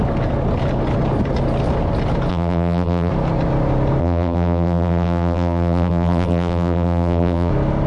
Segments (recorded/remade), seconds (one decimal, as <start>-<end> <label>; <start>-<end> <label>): 0.0-2.3 recorded; 2.3-3.1 remade; 3.1-4.0 recorded; 4.0-7.5 remade; 7.5-7.9 recorded